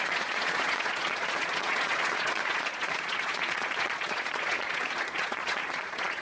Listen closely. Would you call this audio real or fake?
fake